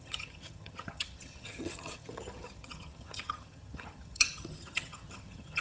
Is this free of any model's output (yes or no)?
no